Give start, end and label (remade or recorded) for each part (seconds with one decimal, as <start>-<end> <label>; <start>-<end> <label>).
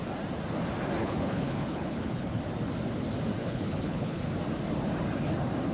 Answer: 0.0-1.0 recorded; 1.0-2.4 remade; 2.4-3.4 recorded; 3.4-4.2 remade; 4.2-5.7 recorded